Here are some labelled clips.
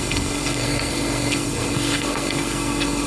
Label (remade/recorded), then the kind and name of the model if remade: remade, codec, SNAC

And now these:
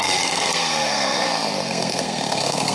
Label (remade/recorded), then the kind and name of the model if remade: remade, codec, SNAC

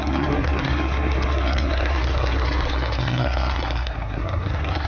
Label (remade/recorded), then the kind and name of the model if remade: remade, codec, SNAC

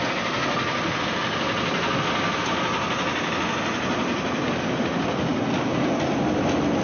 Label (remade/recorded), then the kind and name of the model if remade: recorded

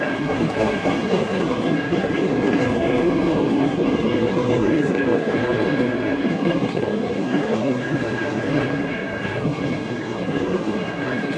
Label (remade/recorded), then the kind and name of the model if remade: remade, codec, SNAC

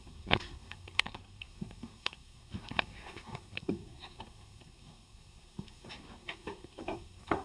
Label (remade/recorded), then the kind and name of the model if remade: remade, codec, SNAC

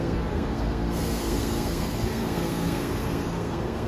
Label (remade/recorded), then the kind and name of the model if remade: remade, codec, SNAC